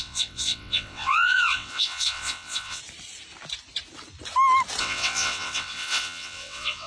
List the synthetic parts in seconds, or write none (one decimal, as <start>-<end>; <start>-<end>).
0.0-2.8; 4.8-6.9